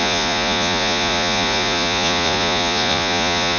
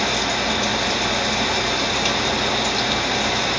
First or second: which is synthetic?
first